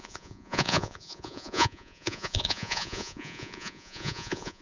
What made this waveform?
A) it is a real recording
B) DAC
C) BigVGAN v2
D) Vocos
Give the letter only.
D